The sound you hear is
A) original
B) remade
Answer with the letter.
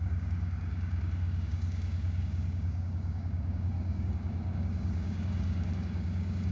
B